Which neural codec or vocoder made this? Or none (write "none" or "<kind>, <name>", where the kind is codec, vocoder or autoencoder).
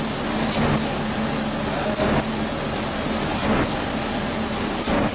none